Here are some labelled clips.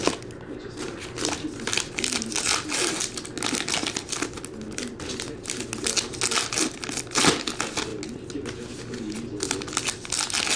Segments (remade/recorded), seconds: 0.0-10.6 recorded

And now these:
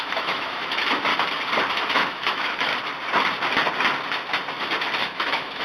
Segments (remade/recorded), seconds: 0.0-1.1 remade; 1.1-1.7 recorded; 1.7-2.7 remade; 2.7-5.0 recorded; 5.0-5.6 remade

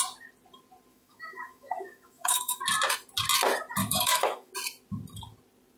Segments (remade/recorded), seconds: 0.0-0.9 recorded; 0.9-2.6 remade; 2.6-3.8 recorded; 3.8-4.5 remade; 4.5-5.8 recorded

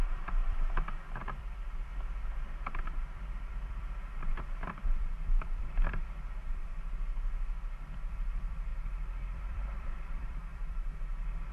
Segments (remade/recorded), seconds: 0.0-1.9 remade; 1.9-2.8 recorded; 2.8-11.5 remade

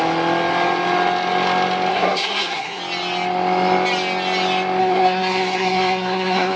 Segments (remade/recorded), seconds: 0.0-1.9 recorded; 1.9-2.8 remade; 2.8-4.8 recorded; 4.8-6.6 remade

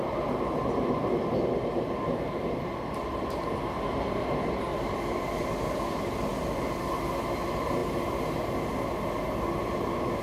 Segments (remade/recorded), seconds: 0.0-4.7 recorded; 4.7-5.7 remade; 5.7-6.3 recorded; 6.3-6.8 remade; 6.8-10.2 recorded